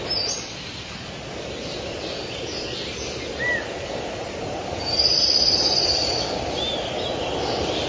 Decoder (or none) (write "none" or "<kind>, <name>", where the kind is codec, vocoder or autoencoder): none